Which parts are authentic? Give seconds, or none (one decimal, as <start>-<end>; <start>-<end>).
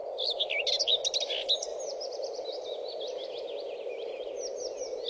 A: 0.0-1.7; 4.2-5.1